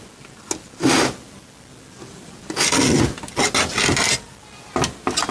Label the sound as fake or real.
real